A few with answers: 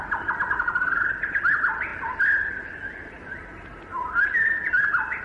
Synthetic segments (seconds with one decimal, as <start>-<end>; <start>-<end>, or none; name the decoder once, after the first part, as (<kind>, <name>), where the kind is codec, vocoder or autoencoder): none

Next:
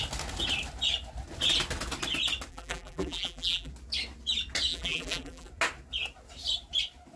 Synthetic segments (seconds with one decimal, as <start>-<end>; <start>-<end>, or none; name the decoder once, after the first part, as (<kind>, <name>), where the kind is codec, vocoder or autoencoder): 2.5-3.7 (vocoder, BigVGAN v2); 4.7-5.5

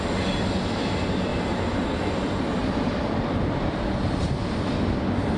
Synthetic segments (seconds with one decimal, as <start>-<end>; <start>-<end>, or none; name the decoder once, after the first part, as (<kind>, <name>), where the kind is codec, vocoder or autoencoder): 1.3-2.2 (vocoder, BigVGAN v2); 2.6-4.2

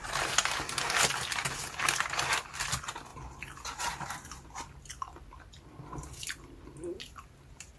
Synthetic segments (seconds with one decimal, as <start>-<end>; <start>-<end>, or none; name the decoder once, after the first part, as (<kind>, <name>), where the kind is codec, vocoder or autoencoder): none

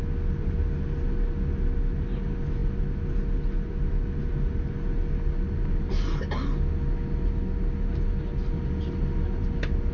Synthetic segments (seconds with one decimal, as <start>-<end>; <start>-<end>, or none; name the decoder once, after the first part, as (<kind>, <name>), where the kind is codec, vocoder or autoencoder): none

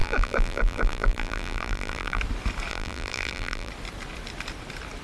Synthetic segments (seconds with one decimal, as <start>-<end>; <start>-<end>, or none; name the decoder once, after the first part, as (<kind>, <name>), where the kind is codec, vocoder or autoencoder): 0.0-2.2 (vocoder, BigVGAN v2); 2.7-3.7

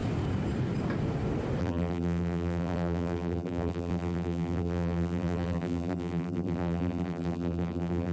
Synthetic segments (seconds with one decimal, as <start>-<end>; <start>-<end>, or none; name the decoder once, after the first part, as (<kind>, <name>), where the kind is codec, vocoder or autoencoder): 1.6-8.1 (vocoder, BigVGAN v2)